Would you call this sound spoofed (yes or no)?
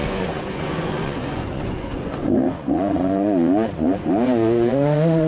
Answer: yes